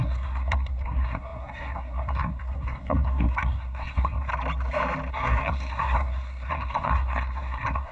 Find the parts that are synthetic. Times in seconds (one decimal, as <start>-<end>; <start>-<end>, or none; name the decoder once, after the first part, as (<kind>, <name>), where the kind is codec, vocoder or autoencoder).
0.0-4.3 (codec, SNAC); 5.1-7.9